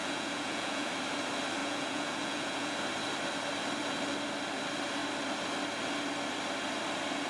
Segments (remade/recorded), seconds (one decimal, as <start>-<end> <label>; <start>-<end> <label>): 0.0-0.9 remade; 0.9-1.6 recorded; 1.6-2.8 remade; 2.8-7.3 recorded